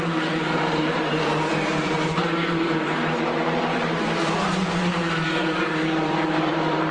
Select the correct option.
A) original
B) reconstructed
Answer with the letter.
B